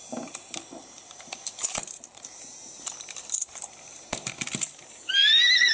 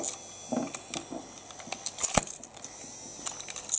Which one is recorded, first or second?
second